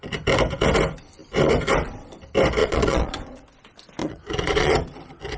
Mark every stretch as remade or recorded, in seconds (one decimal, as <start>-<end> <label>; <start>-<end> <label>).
0.0-2.6 recorded; 2.6-3.4 remade; 3.4-4.0 recorded; 4.0-4.7 remade; 4.7-5.4 recorded